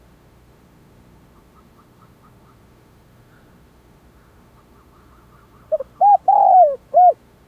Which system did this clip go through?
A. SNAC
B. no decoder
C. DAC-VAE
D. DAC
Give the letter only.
C